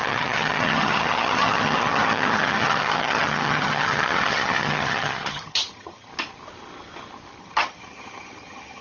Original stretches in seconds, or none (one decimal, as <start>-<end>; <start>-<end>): 6.1-7.4